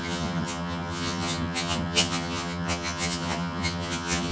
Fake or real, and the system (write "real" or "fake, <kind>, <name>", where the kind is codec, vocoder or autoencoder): fake, vocoder, HiFi-GAN